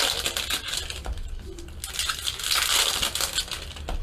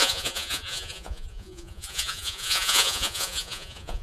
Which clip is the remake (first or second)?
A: second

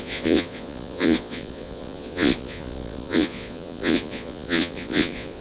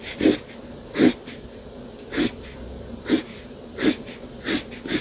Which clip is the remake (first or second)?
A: first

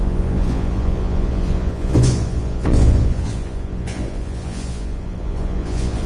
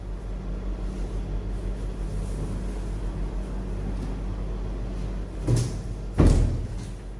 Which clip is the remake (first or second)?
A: first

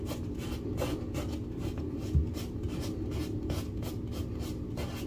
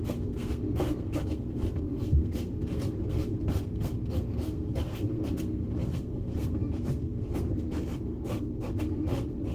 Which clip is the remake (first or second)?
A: second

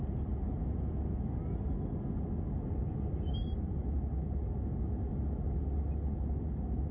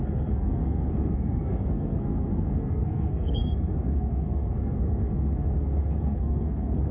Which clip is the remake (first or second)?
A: second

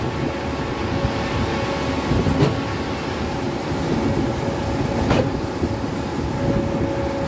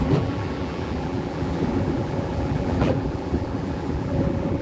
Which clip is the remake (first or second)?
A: second